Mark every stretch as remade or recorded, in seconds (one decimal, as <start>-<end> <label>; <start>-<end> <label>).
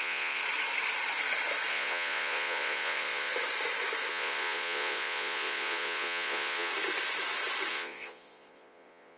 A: 0.0-0.4 remade; 0.4-1.7 recorded; 1.7-3.3 remade; 3.3-4.1 recorded; 4.1-6.7 remade; 6.7-7.7 recorded; 7.7-9.2 remade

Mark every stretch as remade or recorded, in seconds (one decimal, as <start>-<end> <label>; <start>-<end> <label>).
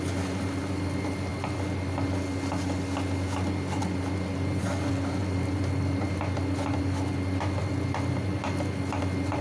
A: 0.0-9.4 recorded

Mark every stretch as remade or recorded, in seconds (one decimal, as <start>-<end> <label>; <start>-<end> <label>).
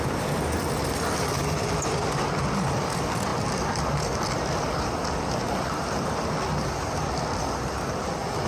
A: 0.0-8.5 recorded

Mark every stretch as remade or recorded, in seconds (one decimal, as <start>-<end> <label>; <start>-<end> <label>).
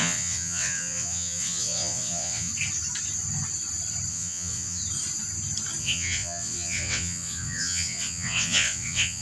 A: 0.0-2.5 remade; 2.5-4.1 recorded; 4.1-4.8 remade; 4.8-5.8 recorded; 5.8-9.2 remade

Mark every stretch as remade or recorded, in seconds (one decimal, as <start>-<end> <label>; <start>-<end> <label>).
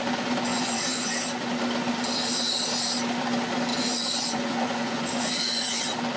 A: 0.0-0.5 recorded; 0.5-1.1 remade; 1.1-3.7 recorded; 3.7-5.8 remade; 5.8-6.2 recorded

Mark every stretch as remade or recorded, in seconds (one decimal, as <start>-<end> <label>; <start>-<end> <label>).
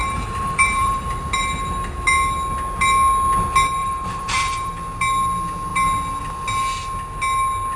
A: 0.0-1.0 remade; 1.0-3.8 recorded; 3.8-4.7 remade; 4.7-7.8 recorded